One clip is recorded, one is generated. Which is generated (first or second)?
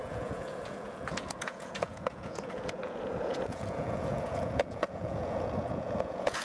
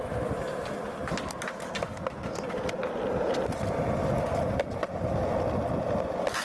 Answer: first